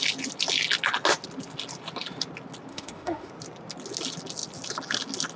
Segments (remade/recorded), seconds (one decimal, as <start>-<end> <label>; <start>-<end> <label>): 0.0-2.7 recorded; 2.7-3.3 remade; 3.3-5.4 recorded

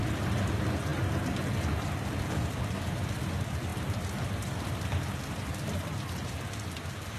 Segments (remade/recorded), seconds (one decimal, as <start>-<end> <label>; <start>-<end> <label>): 0.0-7.2 recorded

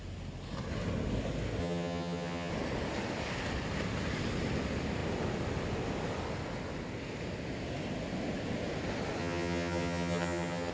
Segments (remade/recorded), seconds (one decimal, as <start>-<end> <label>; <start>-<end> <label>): 0.0-1.6 recorded; 1.6-2.5 remade; 2.5-9.2 recorded; 9.2-10.7 remade

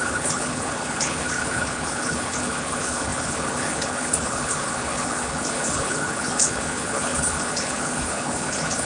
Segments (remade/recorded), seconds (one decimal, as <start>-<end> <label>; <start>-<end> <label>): 0.0-8.9 remade